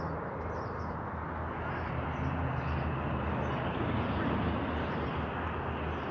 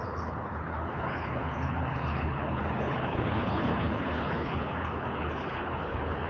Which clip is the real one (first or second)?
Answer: first